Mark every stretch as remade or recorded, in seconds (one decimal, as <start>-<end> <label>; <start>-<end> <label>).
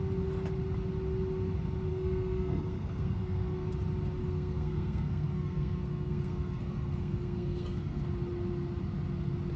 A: 0.0-1.9 recorded; 1.9-3.7 remade; 3.7-4.2 recorded; 4.2-8.0 remade; 8.0-9.6 recorded